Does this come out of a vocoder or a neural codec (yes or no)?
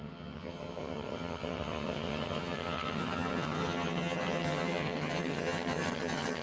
yes